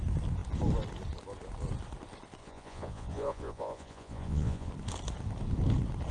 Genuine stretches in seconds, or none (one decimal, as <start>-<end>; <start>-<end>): 0.0-2.4; 4.7-6.1